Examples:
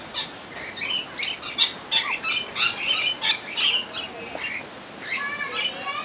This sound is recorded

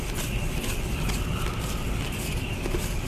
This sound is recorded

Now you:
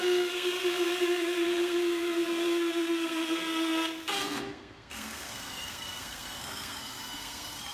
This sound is remade